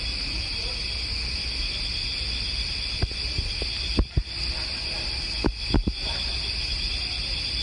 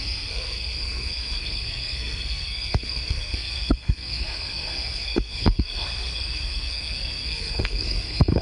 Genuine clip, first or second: first